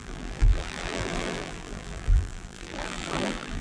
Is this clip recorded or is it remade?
remade